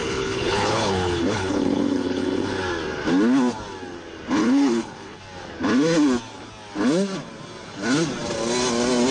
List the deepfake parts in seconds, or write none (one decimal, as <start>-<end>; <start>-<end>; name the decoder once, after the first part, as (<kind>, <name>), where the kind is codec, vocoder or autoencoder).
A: 0.0-2.5 (codec, HILCodec); 4.4-5.2